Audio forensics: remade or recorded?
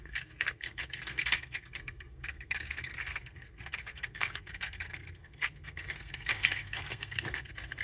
remade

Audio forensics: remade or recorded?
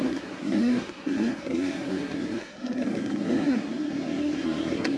remade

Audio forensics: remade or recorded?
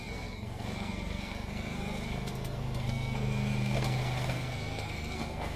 remade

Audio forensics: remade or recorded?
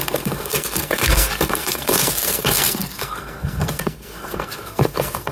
remade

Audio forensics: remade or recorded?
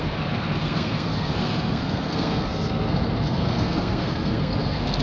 remade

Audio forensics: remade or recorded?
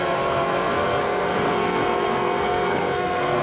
remade